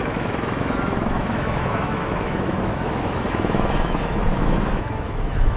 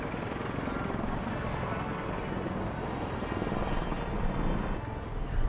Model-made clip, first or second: first